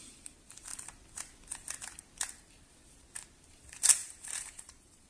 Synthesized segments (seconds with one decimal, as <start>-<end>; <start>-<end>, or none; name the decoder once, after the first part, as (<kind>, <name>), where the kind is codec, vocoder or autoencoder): 4.0-5.1 (vocoder, BigVGAN v2)